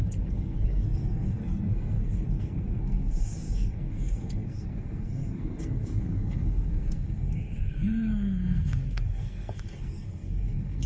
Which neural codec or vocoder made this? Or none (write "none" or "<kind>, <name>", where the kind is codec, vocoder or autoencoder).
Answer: codec, SNAC